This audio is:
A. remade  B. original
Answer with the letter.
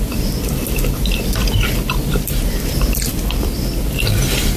A